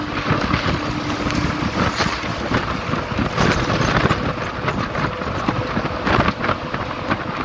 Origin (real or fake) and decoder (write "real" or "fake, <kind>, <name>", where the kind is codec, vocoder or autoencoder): real